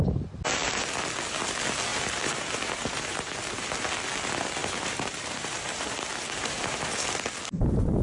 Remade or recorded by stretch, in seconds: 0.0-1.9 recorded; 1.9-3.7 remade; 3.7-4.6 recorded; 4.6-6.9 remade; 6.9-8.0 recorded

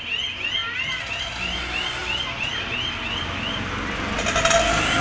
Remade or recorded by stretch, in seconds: 0.0-5.0 recorded

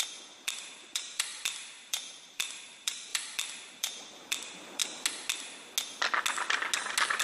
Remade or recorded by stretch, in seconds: 0.0-4.8 remade; 4.8-7.2 recorded

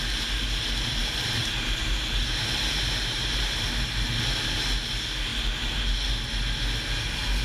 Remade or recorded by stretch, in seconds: 0.0-1.0 recorded; 1.0-3.8 remade; 3.8-7.4 recorded

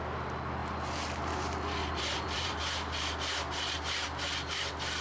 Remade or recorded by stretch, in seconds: 0.0-1.8 recorded; 1.8-3.0 remade; 3.0-5.0 recorded

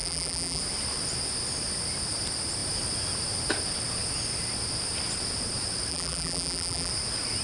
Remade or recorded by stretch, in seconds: 0.0-0.6 remade; 0.6-5.9 recorded; 5.9-6.9 remade; 6.9-7.4 recorded

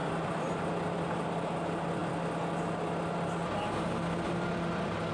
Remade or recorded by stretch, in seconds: 0.0-0.5 remade; 0.5-5.1 recorded